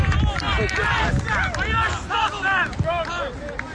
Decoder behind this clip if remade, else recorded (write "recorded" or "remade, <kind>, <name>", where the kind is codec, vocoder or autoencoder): recorded